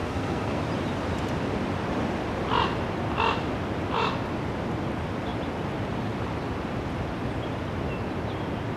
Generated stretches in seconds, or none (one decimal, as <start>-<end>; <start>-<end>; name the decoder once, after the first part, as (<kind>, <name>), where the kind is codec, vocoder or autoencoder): 0.0-0.6 (codec, SNAC)